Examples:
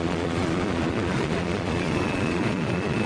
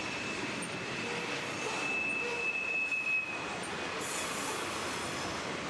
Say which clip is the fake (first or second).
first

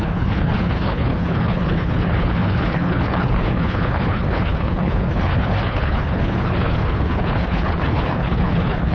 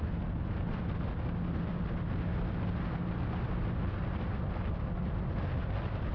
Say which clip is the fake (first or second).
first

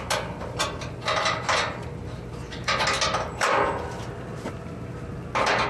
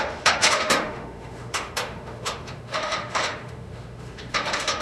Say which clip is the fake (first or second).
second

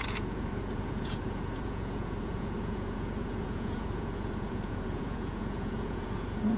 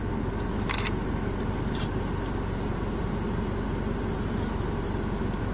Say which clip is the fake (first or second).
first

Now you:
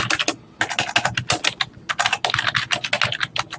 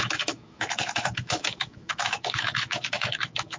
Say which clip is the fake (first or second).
second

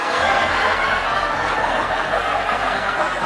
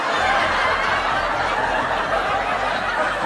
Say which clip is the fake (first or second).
first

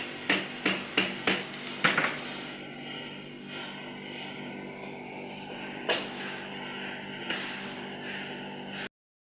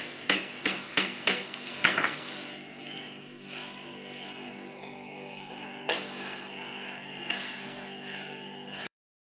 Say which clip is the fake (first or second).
second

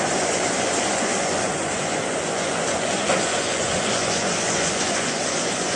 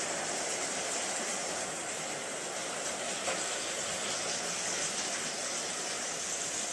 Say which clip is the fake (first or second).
first